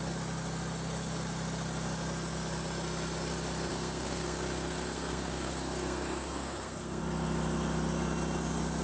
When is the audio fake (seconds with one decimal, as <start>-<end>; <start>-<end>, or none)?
3.7-7.0